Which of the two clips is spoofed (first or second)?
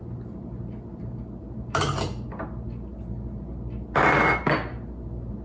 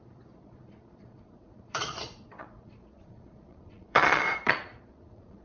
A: second